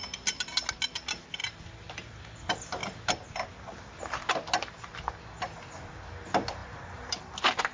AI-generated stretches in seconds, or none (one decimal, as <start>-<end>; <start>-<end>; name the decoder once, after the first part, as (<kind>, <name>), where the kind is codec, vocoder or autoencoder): 6.6-7.2 (vocoder, BigVGAN v2)